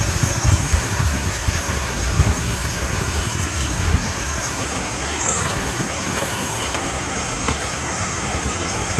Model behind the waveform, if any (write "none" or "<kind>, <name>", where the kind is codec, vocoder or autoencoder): codec, SNAC